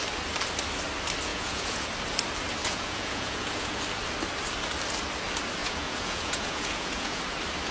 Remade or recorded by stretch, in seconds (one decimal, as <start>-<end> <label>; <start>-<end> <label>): 0.0-1.3 recorded; 1.3-1.9 remade; 1.9-2.6 recorded; 2.6-3.8 remade; 3.8-5.6 recorded; 5.6-7.2 remade; 7.2-7.7 recorded